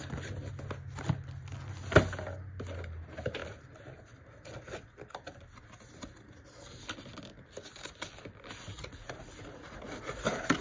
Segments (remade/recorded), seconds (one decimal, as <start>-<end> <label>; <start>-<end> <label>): 0.0-8.7 recorded; 8.7-9.2 remade; 9.2-10.6 recorded